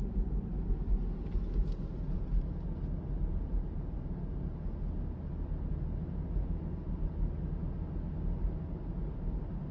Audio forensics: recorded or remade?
recorded